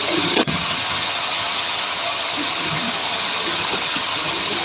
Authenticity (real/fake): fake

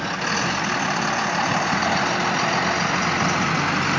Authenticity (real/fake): real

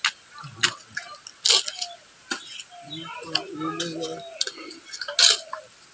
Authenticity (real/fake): real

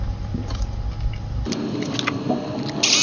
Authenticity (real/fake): real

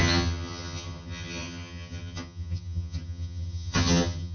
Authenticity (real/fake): fake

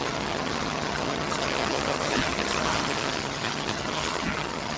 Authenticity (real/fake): fake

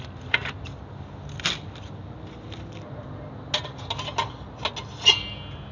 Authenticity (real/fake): real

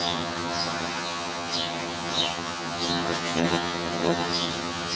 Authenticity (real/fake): fake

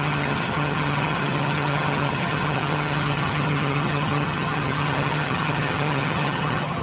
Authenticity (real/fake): fake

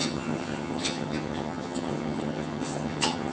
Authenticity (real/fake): fake